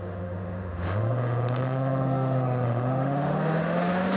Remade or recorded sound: remade